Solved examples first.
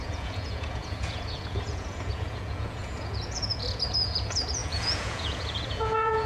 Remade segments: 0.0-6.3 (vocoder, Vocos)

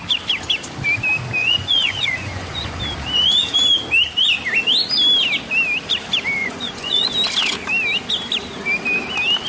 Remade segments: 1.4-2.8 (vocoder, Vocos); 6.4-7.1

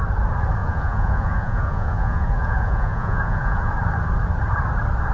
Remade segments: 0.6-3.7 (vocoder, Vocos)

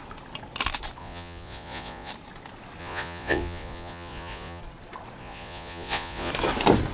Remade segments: 1.0-2.1 (vocoder, Vocos); 2.8-4.6; 5.2-6.3

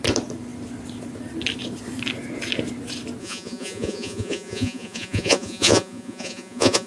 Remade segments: 3.2-6.9 (vocoder, Vocos)

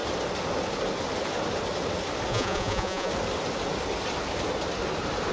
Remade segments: 2.3-3.1 (vocoder, Vocos)

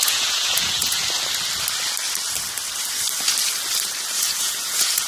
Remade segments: 0.0-1.0 (vocoder, Vocos); 4.1-5.1